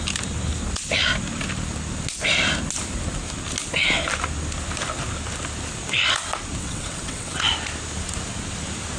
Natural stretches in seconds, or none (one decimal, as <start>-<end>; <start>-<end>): 0.0-6.6; 7.4-9.0